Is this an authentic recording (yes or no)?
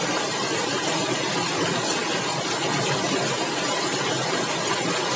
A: yes